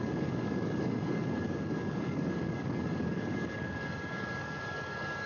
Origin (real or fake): fake